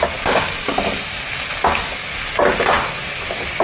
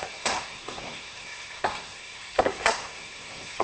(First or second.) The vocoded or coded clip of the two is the second